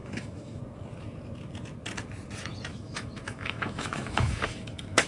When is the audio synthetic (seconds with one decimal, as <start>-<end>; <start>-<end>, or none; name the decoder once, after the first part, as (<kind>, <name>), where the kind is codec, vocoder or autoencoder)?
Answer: 0.0-0.6 (autoencoder, DAC-VAE); 2.7-5.1